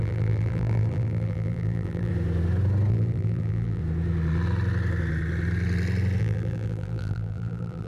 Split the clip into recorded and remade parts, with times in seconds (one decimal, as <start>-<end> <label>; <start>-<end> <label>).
0.0-2.1 remade; 2.1-2.9 recorded; 2.9-3.8 remade; 3.8-6.2 recorded; 6.2-7.9 remade